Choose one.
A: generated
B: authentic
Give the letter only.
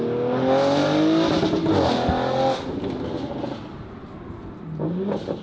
B